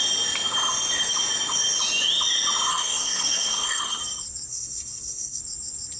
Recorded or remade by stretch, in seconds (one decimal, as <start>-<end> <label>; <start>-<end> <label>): 0.0-2.7 recorded; 2.7-4.0 remade; 4.0-4.5 recorded; 4.5-5.4 remade; 5.4-6.0 recorded